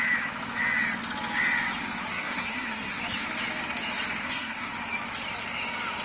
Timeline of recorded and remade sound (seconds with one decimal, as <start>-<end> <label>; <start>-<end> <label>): 0.0-2.1 recorded; 2.1-3.0 remade; 3.0-4.2 recorded; 4.2-4.7 remade; 4.7-6.0 recorded